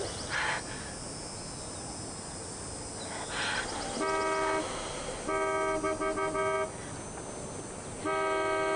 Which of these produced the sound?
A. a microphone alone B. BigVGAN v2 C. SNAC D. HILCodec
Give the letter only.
A